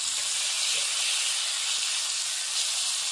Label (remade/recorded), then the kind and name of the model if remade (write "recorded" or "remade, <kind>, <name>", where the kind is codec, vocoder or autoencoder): recorded